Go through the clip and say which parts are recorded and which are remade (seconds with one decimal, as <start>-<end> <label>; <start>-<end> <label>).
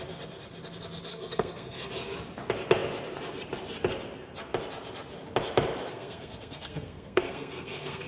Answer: 0.0-1.1 recorded; 1.1-1.9 remade; 1.9-5.9 recorded; 5.9-8.1 remade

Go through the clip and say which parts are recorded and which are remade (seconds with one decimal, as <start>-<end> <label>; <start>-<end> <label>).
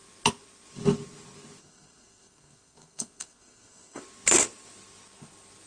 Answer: 0.0-1.6 recorded; 1.6-4.0 remade; 4.0-5.7 recorded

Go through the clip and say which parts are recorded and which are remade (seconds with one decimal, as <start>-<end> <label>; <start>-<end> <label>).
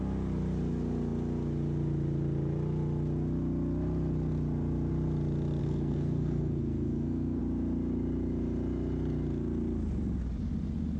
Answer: 0.0-5.6 recorded; 5.6-7.4 remade; 7.4-11.0 recorded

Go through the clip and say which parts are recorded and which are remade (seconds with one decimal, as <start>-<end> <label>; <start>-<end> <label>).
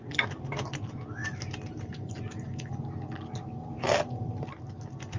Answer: 0.0-5.2 recorded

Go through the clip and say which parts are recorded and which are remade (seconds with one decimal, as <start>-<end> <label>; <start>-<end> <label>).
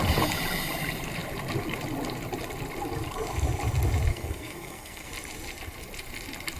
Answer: 0.0-4.1 recorded; 4.1-5.1 remade; 5.1-6.6 recorded